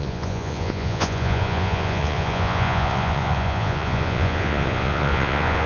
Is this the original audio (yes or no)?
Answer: no